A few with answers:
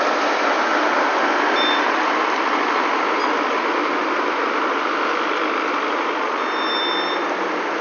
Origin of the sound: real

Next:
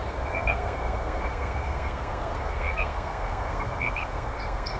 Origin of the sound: fake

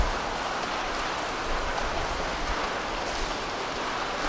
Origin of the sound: real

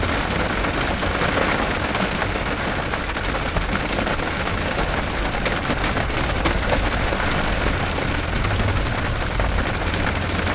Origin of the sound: real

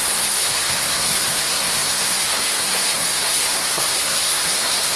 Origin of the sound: fake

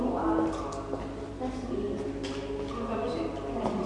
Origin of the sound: real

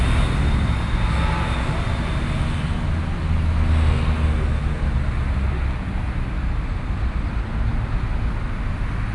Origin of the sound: real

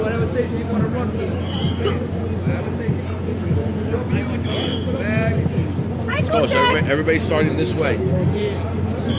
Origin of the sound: real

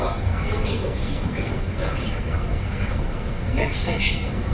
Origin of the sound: fake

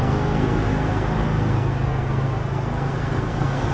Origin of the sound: fake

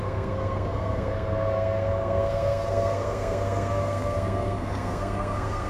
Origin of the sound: fake